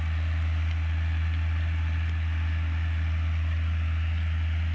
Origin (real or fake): real